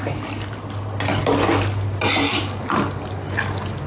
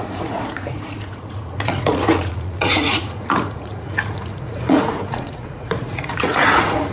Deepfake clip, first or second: second